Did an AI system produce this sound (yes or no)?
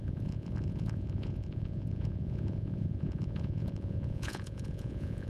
yes